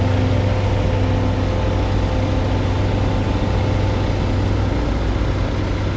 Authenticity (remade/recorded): recorded